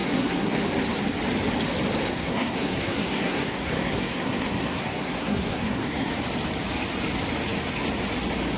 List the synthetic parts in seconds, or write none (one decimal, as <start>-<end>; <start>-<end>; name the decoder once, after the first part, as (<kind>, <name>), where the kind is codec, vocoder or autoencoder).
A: 0.0-0.6 (codec, SNAC); 2.1-6.1